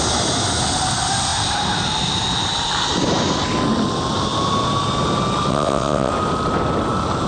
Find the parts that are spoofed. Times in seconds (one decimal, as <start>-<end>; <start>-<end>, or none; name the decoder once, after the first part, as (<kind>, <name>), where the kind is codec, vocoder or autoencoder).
5.5-6.1 (vocoder, WaveNeXt)